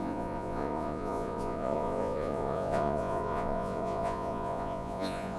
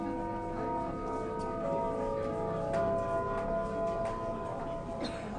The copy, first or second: first